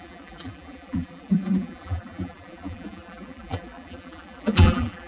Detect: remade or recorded remade